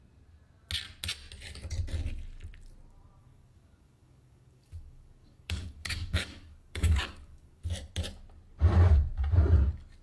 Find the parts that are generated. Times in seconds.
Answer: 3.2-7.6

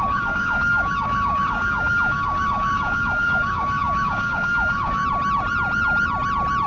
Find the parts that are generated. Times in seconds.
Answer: 0.0-5.0

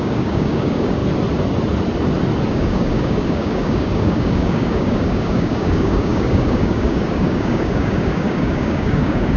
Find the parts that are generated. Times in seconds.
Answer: 0.0-1.0; 2.5-9.4

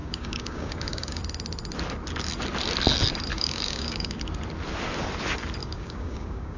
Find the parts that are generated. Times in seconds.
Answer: 0.0-1.2; 3.3-4.2; 5.6-6.6

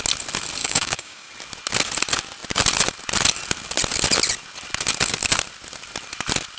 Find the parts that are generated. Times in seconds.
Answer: 0.6-1.3